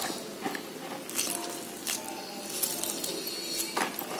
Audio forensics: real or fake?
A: real